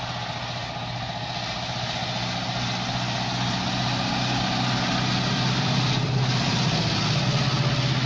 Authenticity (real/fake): real